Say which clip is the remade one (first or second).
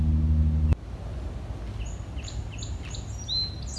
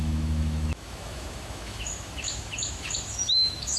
second